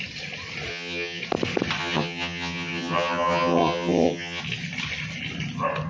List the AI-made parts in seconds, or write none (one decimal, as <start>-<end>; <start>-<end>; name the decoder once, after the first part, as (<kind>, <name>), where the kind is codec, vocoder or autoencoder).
0.7-1.2 (vocoder, HiFi-GAN); 1.8-4.4